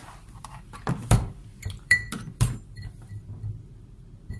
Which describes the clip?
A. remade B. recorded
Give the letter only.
A